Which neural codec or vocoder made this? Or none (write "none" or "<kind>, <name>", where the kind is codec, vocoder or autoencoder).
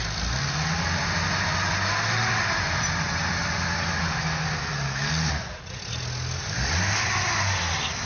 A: none